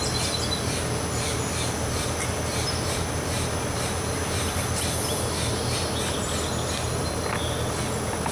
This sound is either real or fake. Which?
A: real